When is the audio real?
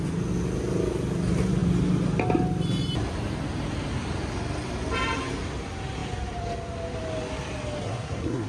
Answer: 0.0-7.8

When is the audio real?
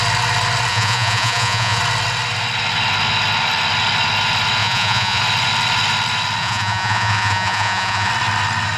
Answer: 0.0-0.7; 1.8-4.6; 5.2-6.4; 8.1-8.8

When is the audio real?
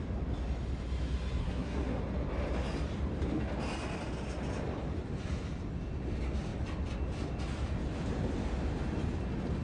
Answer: 0.0-1.4; 2.0-9.6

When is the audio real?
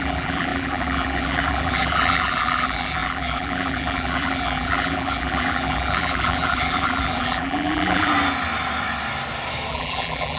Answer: 8.1-9.7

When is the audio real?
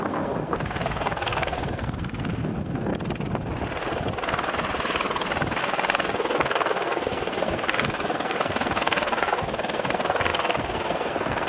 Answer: 2.9-5.6